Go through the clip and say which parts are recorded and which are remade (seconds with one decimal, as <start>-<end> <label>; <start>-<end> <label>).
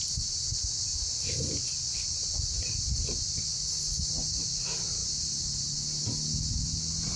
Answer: 0.0-0.9 recorded; 0.9-3.5 remade; 3.5-7.2 recorded